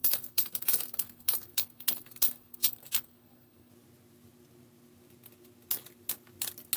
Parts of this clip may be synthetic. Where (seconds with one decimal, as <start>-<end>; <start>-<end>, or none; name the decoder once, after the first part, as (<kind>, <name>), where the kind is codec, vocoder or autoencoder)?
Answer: 0.0-3.7 (codec, SNAC)